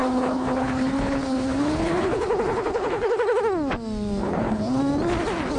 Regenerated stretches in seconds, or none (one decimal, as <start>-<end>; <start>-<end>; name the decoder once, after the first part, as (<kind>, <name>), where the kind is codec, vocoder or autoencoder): 0.0-3.4 (codec, HILCodec); 4.2-4.8